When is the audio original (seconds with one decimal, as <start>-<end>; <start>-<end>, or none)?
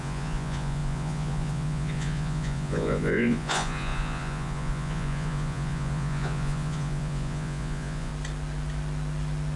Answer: 8.1-9.6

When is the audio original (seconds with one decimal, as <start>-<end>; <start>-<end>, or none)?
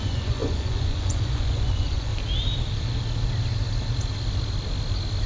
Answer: 2.1-5.3